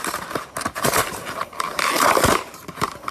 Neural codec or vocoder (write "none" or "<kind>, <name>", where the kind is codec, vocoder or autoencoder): vocoder, BigVGAN v2